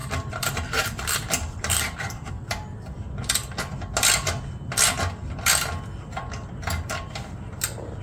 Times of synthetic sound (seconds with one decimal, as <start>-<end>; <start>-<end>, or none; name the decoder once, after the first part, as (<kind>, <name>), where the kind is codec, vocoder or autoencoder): 0.0-2.3 (vocoder, BigVGAN v2)